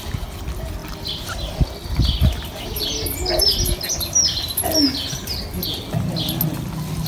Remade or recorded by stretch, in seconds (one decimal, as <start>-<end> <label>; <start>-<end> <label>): 0.0-7.1 recorded